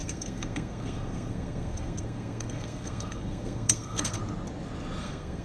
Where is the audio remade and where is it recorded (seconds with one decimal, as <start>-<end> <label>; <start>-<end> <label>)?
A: 0.0-4.2 remade; 4.2-5.0 recorded; 5.0-5.4 remade